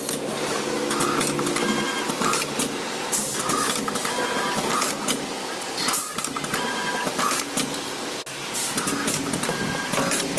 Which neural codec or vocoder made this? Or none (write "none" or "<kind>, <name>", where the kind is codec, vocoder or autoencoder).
none